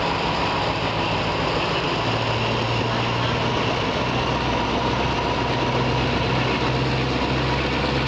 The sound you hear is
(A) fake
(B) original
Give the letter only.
B